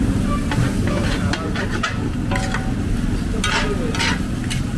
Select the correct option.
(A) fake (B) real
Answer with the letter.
B